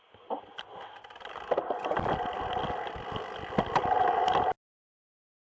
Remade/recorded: recorded